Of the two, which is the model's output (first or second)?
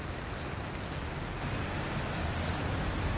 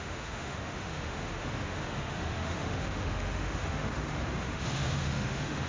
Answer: second